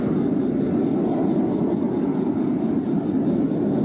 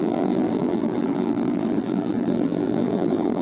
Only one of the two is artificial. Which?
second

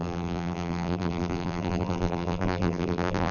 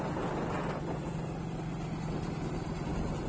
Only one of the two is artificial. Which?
first